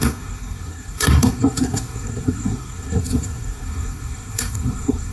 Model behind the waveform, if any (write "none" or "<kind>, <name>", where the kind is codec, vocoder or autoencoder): codec, SNAC